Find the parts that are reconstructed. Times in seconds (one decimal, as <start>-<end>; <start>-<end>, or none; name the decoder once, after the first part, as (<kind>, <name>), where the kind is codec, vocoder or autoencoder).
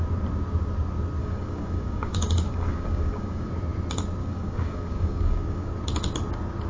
1.2-3.5 (codec, DAC); 4.2-5.7